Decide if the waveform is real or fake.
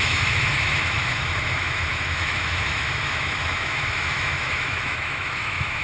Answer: fake